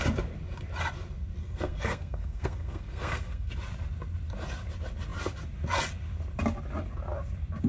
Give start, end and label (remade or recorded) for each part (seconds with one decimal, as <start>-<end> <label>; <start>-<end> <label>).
0.0-1.4 recorded; 1.4-3.5 remade; 3.5-7.7 recorded